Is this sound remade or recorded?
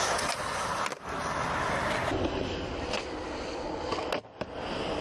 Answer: recorded